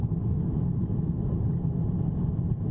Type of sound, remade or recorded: recorded